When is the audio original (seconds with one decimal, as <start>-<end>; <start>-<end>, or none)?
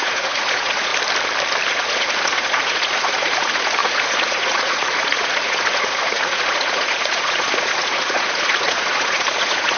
0.9-1.7